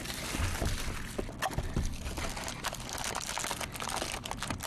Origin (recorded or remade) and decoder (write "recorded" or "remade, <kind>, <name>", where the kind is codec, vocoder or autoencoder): recorded